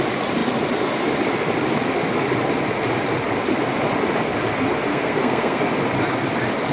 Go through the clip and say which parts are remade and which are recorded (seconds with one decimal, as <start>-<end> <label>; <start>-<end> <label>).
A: 0.0-4.9 recorded; 4.9-5.6 remade; 5.6-6.7 recorded